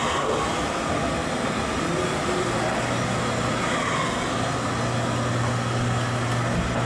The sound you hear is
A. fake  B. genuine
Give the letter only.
B